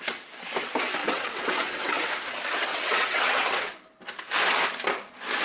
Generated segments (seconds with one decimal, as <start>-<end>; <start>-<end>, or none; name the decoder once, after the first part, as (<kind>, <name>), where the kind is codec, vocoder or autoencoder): 1.0-2.1 (vocoder, WaveNeXt); 2.7-3.7